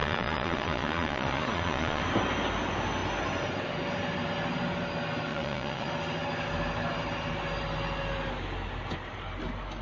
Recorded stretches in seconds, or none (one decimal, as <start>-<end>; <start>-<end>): 2.0-5.3; 5.9-9.8